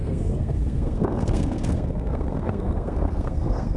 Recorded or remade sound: remade